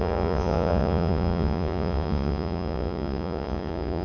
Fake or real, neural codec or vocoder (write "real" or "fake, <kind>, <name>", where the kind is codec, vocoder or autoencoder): fake, vocoder, Vocos